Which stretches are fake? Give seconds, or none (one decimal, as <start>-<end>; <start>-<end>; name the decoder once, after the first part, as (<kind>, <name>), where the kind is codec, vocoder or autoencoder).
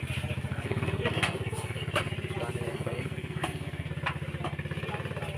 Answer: 0.5-2.1 (codec, SNAC); 2.7-3.9